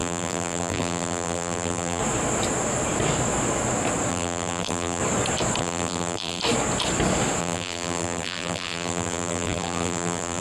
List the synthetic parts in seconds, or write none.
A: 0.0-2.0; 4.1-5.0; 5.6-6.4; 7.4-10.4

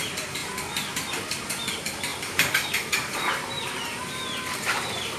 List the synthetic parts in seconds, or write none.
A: 2.1-5.2

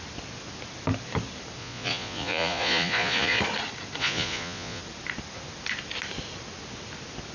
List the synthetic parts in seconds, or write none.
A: 1.6-3.4; 4.0-4.8

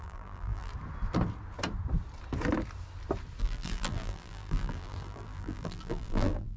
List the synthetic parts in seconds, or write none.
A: 0.0-0.7; 3.4-6.6

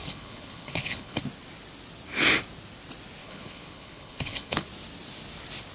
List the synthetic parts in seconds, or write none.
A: 0.0-1.2; 3.2-4.7

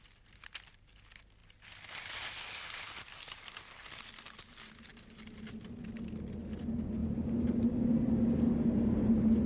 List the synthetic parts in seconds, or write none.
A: none

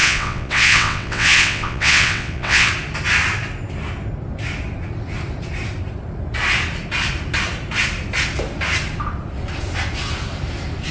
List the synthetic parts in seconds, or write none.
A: 0.0-2.7